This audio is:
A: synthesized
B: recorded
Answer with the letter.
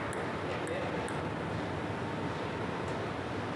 B